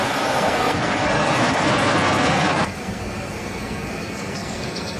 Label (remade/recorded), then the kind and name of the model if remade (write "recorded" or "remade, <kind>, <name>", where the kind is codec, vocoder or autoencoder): remade, codec, SNAC